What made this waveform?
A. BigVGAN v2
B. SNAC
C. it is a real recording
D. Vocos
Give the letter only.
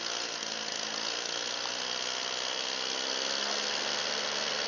C